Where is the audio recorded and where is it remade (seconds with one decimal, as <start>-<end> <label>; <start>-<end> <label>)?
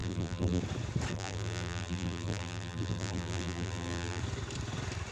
0.0-0.6 remade; 0.6-1.1 recorded; 1.1-4.2 remade; 4.2-5.1 recorded